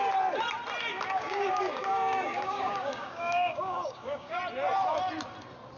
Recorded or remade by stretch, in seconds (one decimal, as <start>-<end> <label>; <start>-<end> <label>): 0.0-0.9 recorded; 0.9-4.4 remade; 4.4-5.8 recorded